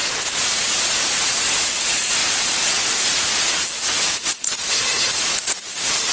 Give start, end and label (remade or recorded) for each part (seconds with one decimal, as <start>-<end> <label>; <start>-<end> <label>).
0.0-0.5 recorded; 0.5-6.1 remade